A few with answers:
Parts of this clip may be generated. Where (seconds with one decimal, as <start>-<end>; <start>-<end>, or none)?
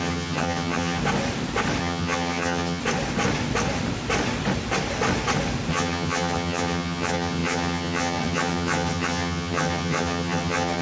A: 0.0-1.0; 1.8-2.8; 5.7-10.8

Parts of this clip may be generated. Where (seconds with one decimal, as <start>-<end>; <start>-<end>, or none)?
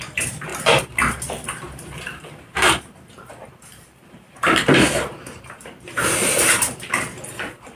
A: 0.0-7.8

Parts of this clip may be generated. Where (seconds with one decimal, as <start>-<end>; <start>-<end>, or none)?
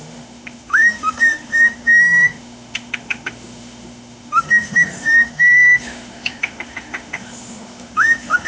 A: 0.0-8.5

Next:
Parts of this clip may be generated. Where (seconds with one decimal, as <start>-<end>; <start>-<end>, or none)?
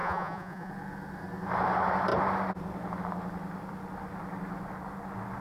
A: 0.0-0.7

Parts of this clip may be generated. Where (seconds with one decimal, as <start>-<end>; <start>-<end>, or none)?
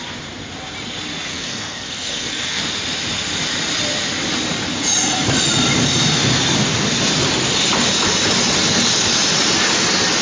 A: 1.3-2.6